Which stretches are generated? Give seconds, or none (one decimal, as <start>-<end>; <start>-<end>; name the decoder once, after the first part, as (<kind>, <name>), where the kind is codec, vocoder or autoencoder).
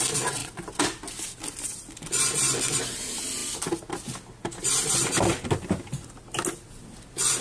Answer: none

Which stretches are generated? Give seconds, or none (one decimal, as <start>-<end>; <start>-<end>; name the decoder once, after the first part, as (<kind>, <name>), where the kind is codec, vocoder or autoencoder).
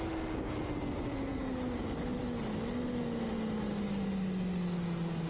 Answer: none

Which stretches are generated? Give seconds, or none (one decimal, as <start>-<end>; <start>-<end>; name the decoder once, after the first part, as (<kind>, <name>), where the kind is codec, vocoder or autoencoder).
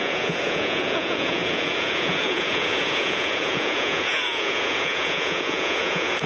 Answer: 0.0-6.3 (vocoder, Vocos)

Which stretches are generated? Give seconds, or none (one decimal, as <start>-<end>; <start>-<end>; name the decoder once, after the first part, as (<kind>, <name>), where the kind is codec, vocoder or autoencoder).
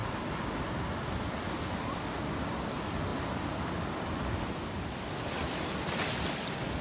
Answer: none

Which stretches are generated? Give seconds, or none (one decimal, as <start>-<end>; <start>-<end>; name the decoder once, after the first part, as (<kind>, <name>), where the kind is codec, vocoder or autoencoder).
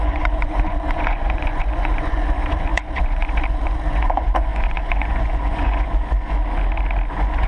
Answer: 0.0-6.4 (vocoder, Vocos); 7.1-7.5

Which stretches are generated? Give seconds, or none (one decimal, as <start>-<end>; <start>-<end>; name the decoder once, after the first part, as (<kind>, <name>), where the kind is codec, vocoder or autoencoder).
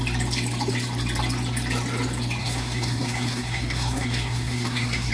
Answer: 2.4-5.1 (codec, SNAC)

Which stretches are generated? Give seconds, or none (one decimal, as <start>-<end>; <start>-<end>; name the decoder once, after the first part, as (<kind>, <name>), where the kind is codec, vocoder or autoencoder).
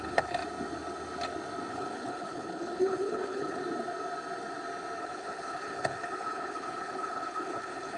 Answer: 0.0-0.4 (codec, HILCodec); 1.7-3.6; 5.0-8.0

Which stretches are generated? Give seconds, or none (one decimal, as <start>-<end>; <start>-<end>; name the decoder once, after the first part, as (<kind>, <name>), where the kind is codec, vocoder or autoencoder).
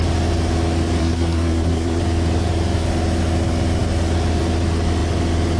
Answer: 1.0-2.0 (codec, SNAC)